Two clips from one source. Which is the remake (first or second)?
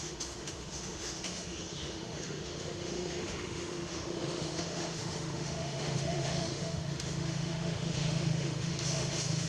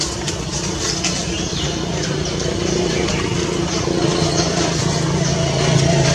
first